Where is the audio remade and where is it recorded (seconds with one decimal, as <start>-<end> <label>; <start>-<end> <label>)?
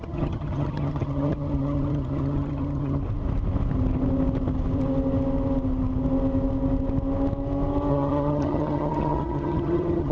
0.0-3.0 remade; 3.0-7.9 recorded; 7.9-10.1 remade